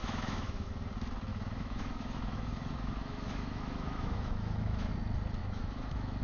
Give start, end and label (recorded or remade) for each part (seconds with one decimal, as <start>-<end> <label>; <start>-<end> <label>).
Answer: 0.0-0.7 remade; 0.7-1.3 recorded; 1.3-4.9 remade; 4.9-5.4 recorded; 5.4-6.2 remade